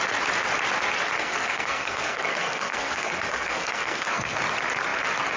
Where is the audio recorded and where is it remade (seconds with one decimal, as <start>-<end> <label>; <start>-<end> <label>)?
0.0-1.2 recorded; 1.2-4.4 remade; 4.4-5.4 recorded